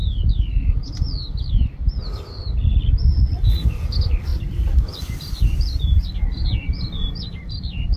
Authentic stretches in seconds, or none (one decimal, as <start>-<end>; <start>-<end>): 0.0-1.5